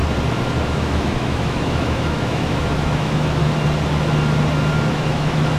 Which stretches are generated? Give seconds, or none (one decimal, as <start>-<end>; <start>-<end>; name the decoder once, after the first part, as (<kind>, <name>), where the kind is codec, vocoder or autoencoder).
0.6-3.4 (autoencoder, DAC-VAE); 4.9-5.6